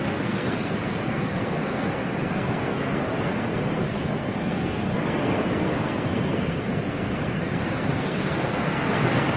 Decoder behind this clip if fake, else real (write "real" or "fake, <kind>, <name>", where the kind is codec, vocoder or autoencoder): fake, codec, SNAC